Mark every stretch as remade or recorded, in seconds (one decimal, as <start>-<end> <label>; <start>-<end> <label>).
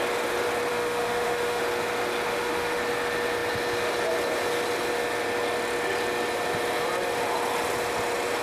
0.0-0.7 recorded; 0.7-1.6 remade; 1.6-2.3 recorded; 2.3-2.8 remade; 2.8-8.4 recorded